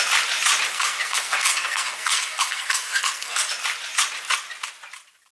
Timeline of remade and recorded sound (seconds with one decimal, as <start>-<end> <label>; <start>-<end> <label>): 0.0-0.7 recorded; 0.7-3.4 remade; 3.4-5.3 recorded